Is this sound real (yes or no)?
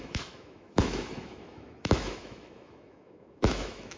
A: no